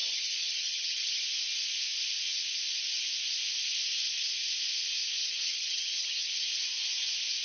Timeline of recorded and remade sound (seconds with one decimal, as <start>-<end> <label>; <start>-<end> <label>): 0.0-1.2 remade; 1.2-5.2 recorded; 5.2-6.3 remade; 6.3-7.4 recorded